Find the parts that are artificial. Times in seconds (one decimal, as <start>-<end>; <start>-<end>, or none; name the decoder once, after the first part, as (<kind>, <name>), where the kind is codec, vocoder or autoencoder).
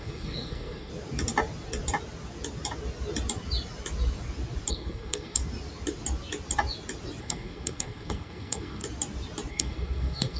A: 0.0-0.9 (codec, SNAC); 4.7-5.4; 7.2-8.8; 9.5-10.4